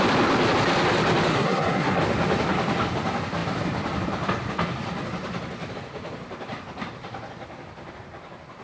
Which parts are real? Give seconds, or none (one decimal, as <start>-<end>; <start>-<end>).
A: 0.0-1.3; 2.0-8.6